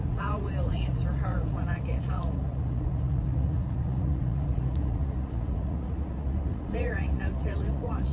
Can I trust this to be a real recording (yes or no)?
no